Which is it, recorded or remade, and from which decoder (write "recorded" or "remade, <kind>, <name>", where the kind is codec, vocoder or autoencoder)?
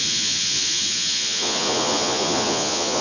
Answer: remade, vocoder, Vocos